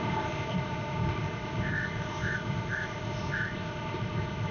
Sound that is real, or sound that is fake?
fake